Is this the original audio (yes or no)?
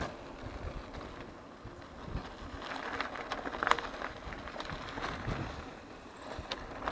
yes